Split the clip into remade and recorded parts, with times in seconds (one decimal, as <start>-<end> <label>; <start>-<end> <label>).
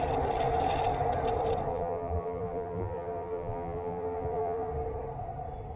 0.0-1.7 recorded; 1.7-4.7 remade; 4.7-5.8 recorded